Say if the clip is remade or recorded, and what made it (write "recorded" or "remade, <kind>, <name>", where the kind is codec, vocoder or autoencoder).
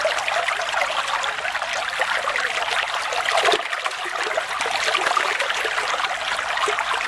recorded